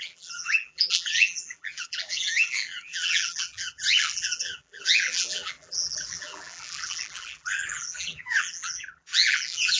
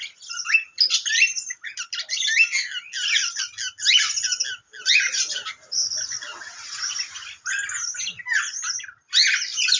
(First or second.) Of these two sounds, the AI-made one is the first